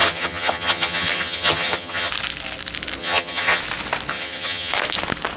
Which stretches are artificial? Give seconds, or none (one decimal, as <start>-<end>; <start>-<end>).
0.0-2.1; 3.0-3.6; 4.1-4.7